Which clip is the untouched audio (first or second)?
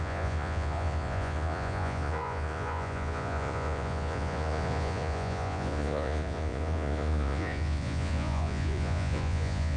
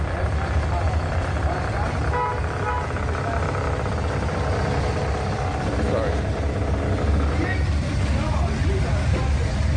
second